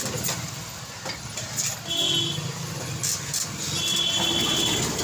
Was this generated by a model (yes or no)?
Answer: no